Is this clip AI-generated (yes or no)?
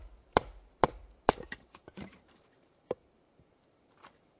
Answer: yes